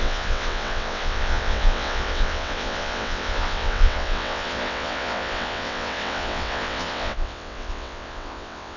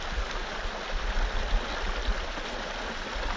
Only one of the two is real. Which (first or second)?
second